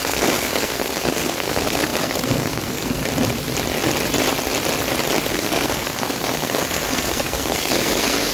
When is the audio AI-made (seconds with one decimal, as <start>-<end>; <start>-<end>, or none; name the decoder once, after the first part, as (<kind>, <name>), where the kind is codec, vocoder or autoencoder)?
0.0-3.0 (codec, SNAC); 5.3-8.3